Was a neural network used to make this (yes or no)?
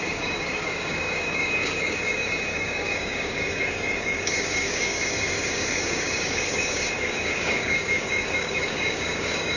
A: yes